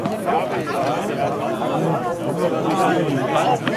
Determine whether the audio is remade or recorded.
recorded